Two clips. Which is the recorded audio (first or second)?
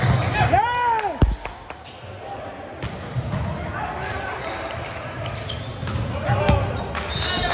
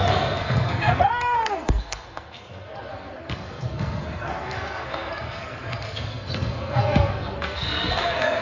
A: first